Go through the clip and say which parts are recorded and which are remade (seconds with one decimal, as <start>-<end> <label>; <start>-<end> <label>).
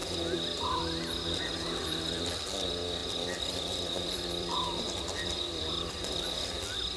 0.0-0.8 remade; 0.8-3.0 recorded; 3.0-5.7 remade; 5.7-7.0 recorded